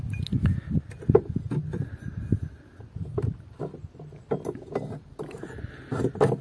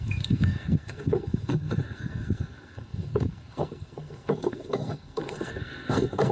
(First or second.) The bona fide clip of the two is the first